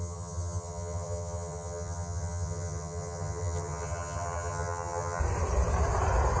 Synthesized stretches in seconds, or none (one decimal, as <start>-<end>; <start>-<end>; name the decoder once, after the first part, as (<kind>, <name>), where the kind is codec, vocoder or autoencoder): 0.0-5.2 (vocoder, HiFi-GAN)